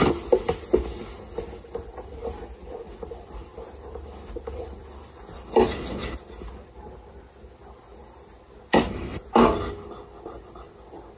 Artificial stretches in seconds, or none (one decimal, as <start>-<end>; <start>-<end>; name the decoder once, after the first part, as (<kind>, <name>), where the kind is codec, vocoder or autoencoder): none